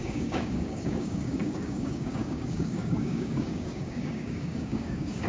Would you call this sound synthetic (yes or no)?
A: yes